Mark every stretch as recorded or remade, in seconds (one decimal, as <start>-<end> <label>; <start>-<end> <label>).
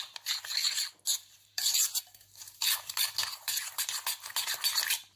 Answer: 0.0-1.1 recorded; 1.1-2.0 remade; 2.0-3.3 recorded; 3.3-3.9 remade; 3.9-5.2 recorded